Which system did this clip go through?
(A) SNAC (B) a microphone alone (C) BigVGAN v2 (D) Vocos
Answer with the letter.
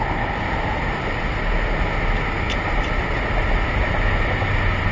B